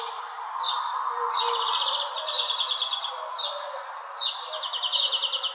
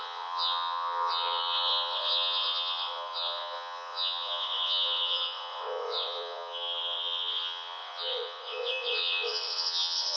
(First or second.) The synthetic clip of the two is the second